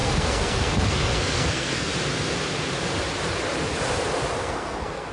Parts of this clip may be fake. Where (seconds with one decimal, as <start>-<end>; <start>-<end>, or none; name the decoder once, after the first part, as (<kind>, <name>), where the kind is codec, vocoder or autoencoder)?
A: 0.0-1.9 (codec, SNAC); 4.4-5.1